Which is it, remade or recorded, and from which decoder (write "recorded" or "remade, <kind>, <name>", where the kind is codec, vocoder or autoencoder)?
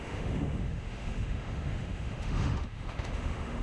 remade, autoencoder, DAC-VAE